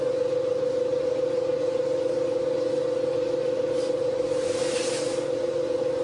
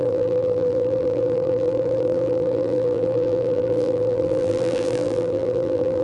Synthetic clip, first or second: second